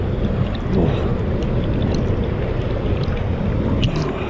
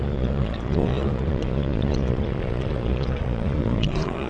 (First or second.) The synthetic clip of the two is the second